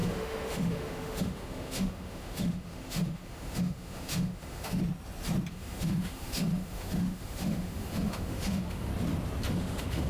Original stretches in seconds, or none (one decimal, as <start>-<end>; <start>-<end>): 4.8-5.5; 8.9-9.5